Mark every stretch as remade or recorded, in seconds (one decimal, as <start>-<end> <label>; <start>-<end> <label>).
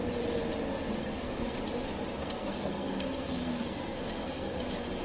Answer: 0.0-1.0 recorded; 1.0-1.6 remade; 1.6-2.2 recorded; 2.2-4.6 remade; 4.6-5.0 recorded